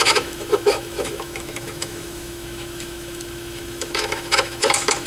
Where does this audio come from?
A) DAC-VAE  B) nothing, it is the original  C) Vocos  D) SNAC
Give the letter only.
A